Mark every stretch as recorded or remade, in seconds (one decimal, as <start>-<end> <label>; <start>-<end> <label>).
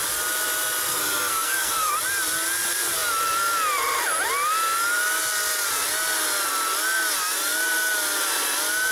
0.0-0.9 recorded; 0.9-1.9 remade; 1.9-8.9 recorded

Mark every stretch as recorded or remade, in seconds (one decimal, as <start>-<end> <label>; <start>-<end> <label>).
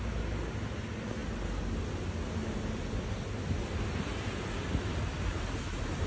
0.0-6.1 recorded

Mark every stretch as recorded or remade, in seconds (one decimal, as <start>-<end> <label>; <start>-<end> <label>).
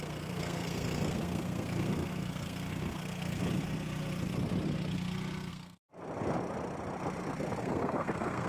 0.0-3.4 remade; 3.4-5.5 recorded; 5.5-5.9 remade; 5.9-7.6 recorded; 7.6-8.5 remade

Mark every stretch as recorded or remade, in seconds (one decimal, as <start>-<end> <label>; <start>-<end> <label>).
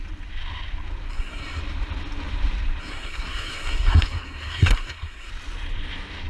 0.0-1.1 recorded; 1.1-1.6 remade; 1.6-2.8 recorded; 2.8-5.3 remade; 5.3-6.3 recorded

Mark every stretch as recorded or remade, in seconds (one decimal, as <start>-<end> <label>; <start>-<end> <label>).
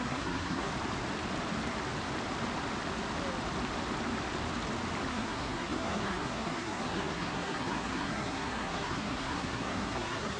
0.0-0.7 remade; 0.7-5.1 recorded; 5.1-10.4 remade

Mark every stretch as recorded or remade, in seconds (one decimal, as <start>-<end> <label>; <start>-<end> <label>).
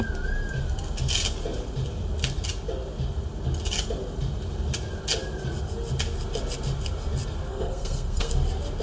0.0-7.5 recorded; 7.5-8.3 remade; 8.3-8.8 recorded